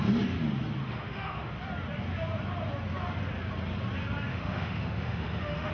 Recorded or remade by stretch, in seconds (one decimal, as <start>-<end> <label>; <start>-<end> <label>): 0.0-0.8 recorded; 0.8-1.5 remade; 1.5-4.3 recorded; 4.3-5.7 remade